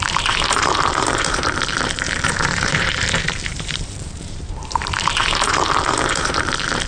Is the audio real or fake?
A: fake